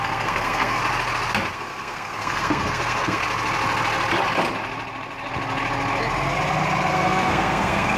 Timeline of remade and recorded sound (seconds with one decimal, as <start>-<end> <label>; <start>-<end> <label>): 0.0-0.8 remade; 0.8-1.5 recorded; 1.5-3.2 remade; 3.2-6.9 recorded; 6.9-8.0 remade